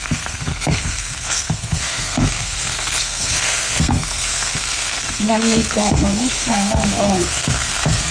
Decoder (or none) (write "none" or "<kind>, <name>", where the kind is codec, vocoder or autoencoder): codec, SNAC